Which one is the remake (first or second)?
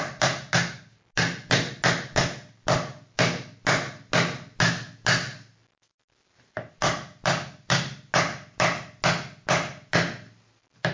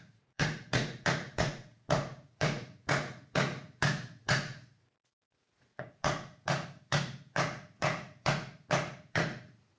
second